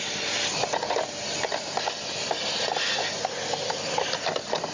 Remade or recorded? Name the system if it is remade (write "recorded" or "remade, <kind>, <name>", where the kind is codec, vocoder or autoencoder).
recorded